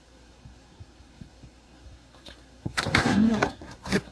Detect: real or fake fake